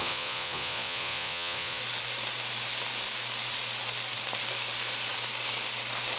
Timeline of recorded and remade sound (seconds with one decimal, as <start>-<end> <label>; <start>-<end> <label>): 0.0-1.8 remade; 1.8-6.2 recorded